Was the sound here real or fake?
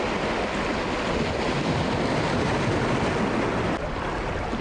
real